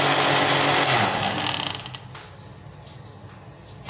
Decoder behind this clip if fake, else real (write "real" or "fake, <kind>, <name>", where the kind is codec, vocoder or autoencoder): real